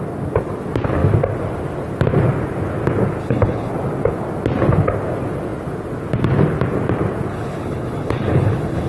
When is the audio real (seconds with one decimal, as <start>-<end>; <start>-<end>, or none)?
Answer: 0.0-3.2; 3.7-7.3